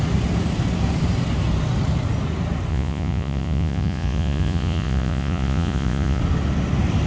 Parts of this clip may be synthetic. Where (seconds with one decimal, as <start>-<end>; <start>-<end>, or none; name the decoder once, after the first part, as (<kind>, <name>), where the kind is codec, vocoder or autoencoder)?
2.7-6.2 (vocoder, Vocos)